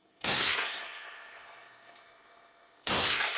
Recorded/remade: remade